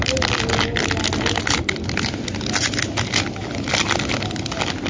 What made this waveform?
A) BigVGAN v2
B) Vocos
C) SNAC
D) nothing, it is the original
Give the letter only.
D